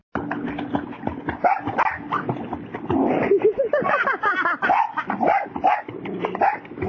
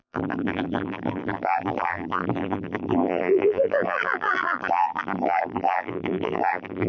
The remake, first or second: second